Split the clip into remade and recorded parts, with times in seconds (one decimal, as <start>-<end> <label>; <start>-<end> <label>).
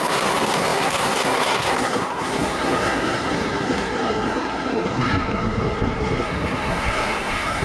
0.0-7.6 remade